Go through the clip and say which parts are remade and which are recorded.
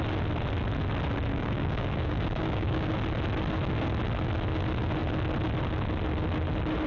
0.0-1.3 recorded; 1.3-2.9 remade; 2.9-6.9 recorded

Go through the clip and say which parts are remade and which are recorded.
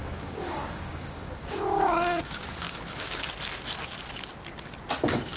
0.0-3.2 remade; 3.2-5.4 recorded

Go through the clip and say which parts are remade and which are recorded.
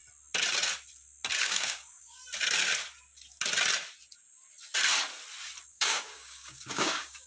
0.0-1.4 recorded; 1.4-2.2 remade; 2.2-5.7 recorded; 5.7-7.3 remade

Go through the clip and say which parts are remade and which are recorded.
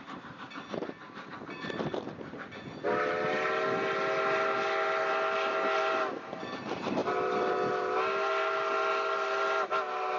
0.0-10.2 recorded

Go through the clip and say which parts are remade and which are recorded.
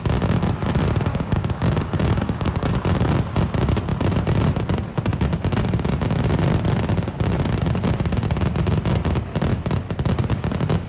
0.0-1.1 recorded; 1.1-2.7 remade; 2.7-10.9 recorded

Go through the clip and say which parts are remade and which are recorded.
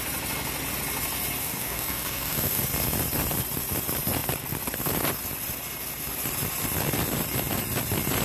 0.0-1.4 recorded; 1.4-2.6 remade; 2.6-8.2 recorded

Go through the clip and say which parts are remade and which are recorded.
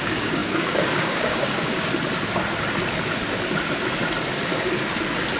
0.0-1.9 remade; 1.9-5.4 recorded